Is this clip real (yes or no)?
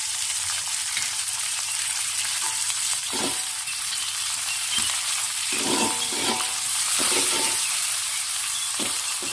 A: no